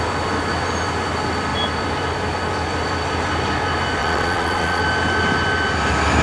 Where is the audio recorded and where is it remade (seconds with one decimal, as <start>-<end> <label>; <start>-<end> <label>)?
0.0-4.0 recorded; 4.0-4.8 remade; 4.8-6.2 recorded